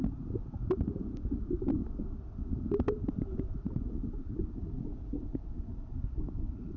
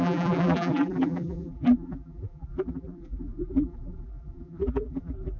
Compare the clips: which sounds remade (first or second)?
second